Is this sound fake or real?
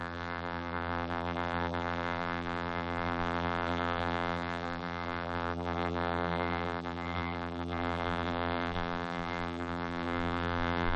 fake